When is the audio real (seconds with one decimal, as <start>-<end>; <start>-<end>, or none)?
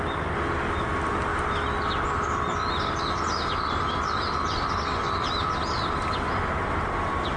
0.0-7.4